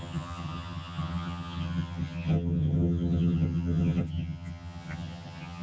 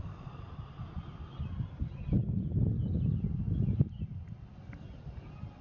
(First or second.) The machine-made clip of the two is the first